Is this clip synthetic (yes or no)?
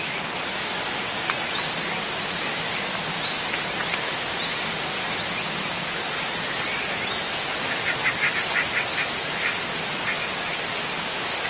no